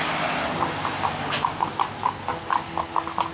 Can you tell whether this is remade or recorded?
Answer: recorded